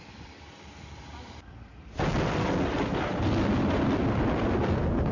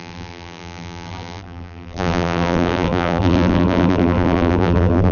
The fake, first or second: second